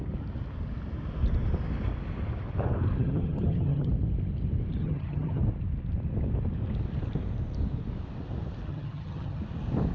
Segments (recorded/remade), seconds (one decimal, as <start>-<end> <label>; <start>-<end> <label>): 0.0-3.0 recorded; 3.0-3.9 remade; 3.9-4.8 recorded; 4.8-5.4 remade; 5.4-8.7 recorded; 8.7-9.4 remade; 9.4-9.9 recorded

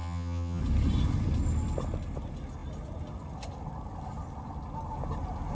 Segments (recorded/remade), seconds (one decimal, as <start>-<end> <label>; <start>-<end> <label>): 0.0-0.6 remade; 0.6-5.5 recorded

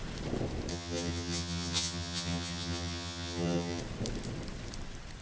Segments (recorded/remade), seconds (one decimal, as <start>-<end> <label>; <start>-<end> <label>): 0.0-0.7 recorded; 0.7-3.8 remade; 3.8-5.2 recorded

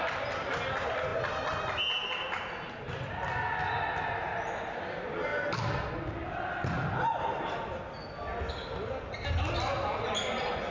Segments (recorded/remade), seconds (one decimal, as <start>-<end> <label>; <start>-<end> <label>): 0.0-10.7 recorded

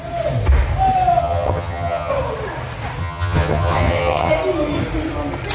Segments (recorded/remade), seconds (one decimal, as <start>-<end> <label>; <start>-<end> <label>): 0.0-1.2 recorded; 1.2-2.1 remade; 2.1-3.0 recorded; 3.0-4.3 remade; 4.3-5.5 recorded

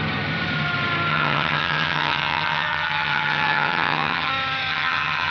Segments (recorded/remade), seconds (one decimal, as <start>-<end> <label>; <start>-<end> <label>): 0.0-1.1 recorded; 1.1-4.3 remade; 4.3-4.7 recorded; 4.7-5.3 remade